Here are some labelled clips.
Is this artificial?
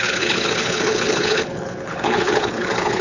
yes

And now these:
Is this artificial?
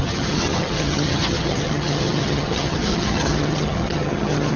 yes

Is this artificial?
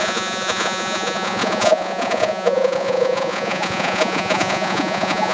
yes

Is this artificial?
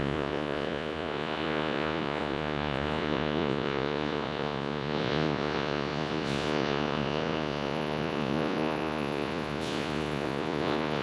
yes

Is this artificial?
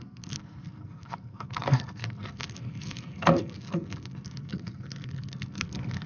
yes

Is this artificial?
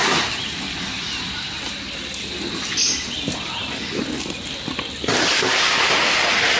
no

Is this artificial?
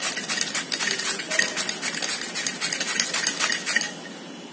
no